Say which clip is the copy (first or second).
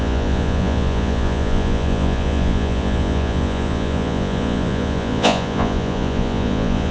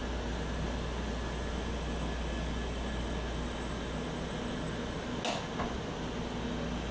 first